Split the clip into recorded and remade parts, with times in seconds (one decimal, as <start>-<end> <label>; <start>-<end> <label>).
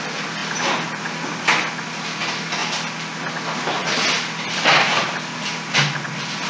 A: 0.0-6.5 recorded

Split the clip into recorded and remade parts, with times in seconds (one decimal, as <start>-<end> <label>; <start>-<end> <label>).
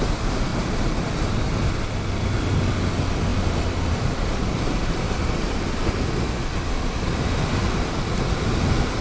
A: 0.0-9.0 recorded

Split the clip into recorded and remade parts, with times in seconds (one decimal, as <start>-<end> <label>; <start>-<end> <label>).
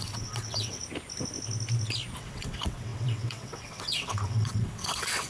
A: 0.0-0.8 remade; 0.8-2.2 recorded; 2.2-5.3 remade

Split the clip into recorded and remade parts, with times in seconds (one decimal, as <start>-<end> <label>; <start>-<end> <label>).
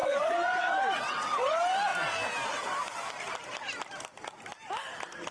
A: 0.0-1.5 remade; 1.5-5.3 recorded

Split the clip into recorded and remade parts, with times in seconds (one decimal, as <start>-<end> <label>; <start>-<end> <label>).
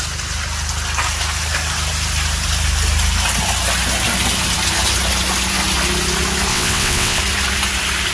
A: 0.0-6.5 recorded; 6.5-7.2 remade; 7.2-8.1 recorded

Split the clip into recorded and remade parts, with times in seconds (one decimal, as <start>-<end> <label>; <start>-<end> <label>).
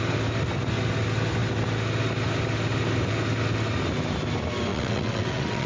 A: 0.0-4.7 recorded; 4.7-5.7 remade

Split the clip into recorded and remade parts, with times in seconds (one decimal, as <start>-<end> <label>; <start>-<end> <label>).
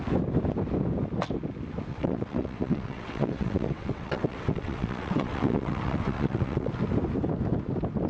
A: 0.0-1.9 recorded; 1.9-6.7 remade; 6.7-8.1 recorded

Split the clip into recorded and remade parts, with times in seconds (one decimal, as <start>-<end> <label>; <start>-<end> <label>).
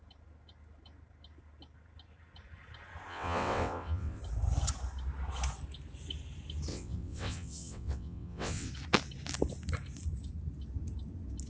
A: 0.0-3.1 recorded; 3.1-4.2 remade; 4.2-6.7 recorded; 6.7-8.7 remade; 8.7-11.5 recorded